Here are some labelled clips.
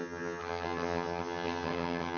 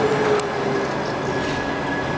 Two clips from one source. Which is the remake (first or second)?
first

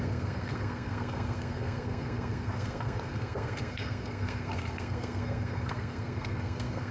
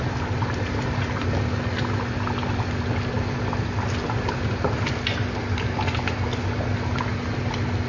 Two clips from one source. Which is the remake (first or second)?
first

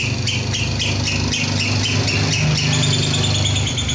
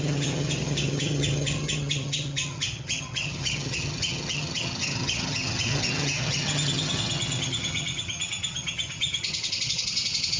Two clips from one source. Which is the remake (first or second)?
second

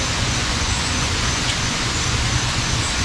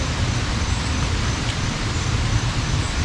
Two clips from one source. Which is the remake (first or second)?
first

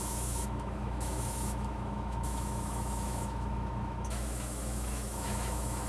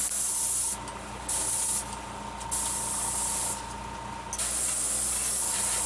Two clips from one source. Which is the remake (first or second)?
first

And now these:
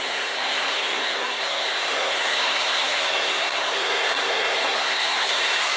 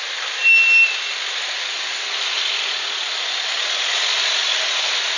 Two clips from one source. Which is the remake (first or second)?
first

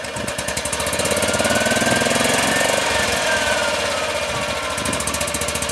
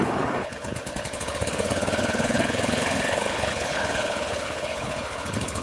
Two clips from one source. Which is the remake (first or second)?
second